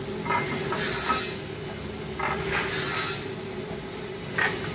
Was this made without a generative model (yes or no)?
yes